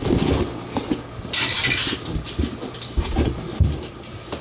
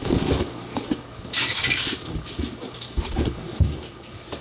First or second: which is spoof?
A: second